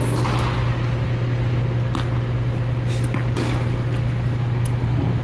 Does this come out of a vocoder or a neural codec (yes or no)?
no